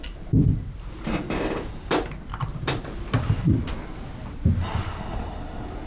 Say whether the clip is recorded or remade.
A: recorded